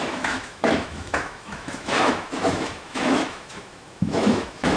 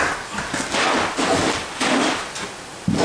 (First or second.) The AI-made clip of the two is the first